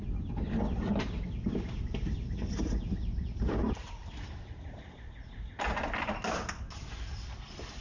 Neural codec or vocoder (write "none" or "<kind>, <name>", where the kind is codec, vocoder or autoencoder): none